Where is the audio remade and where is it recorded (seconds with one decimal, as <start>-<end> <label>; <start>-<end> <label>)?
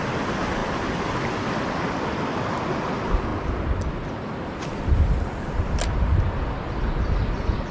0.0-7.7 recorded